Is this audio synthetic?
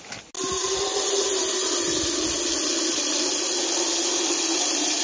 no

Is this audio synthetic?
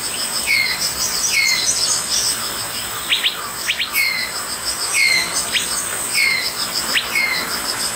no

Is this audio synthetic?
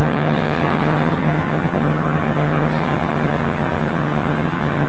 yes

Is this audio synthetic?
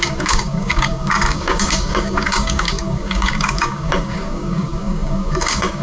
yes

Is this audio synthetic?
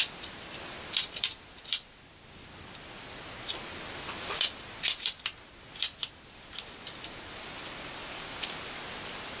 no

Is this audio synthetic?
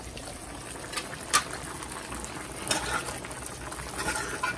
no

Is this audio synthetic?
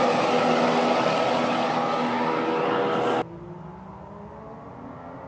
no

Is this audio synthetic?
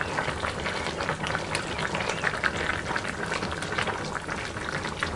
no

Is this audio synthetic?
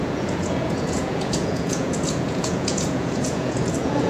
yes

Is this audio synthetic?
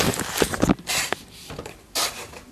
yes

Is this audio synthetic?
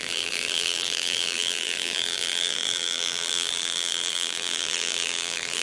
yes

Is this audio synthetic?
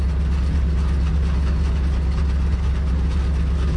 no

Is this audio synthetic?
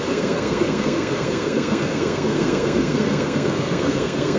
yes